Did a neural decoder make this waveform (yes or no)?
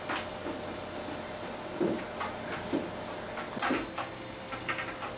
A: no